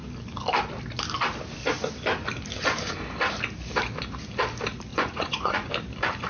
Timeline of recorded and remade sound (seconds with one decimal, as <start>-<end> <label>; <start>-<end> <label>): 0.0-4.9 recorded; 4.9-5.7 remade; 5.7-6.3 recorded